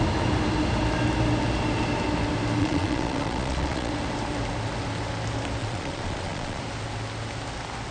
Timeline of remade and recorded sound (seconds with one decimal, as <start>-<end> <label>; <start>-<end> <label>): 0.0-2.6 recorded; 2.6-3.9 remade; 3.9-5.6 recorded; 5.6-6.6 remade; 6.6-7.9 recorded